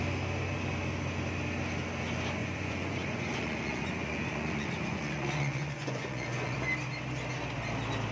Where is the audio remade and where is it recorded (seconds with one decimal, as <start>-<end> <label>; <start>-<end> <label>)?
0.0-2.4 recorded; 2.4-6.6 remade; 6.6-8.1 recorded